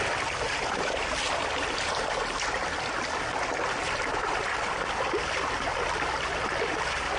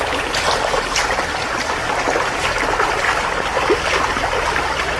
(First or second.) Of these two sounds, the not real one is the first